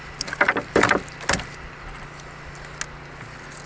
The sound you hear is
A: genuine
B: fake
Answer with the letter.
A